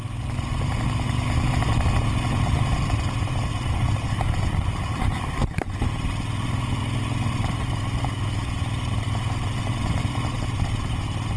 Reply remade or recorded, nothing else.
recorded